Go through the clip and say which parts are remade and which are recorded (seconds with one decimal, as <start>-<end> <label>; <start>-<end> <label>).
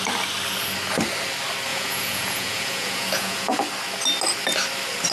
0.0-1.7 recorded; 1.7-3.6 remade; 3.6-5.1 recorded